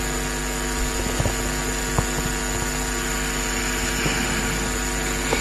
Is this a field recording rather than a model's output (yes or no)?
yes